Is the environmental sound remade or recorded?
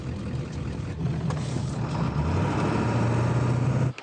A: recorded